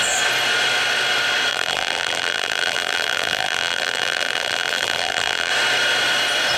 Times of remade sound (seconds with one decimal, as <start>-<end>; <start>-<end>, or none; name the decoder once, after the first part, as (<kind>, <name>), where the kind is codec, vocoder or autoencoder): 1.5-5.5 (vocoder, BigVGAN v2)